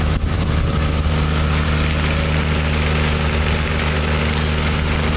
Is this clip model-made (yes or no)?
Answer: no